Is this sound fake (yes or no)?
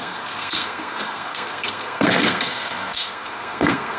yes